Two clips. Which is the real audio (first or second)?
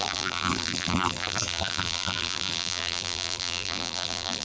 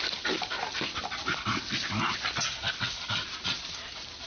second